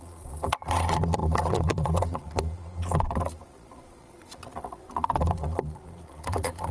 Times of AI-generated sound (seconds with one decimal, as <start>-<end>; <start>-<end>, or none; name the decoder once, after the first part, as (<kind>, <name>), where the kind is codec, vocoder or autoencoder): 0.0-6.7 (vocoder, Vocos)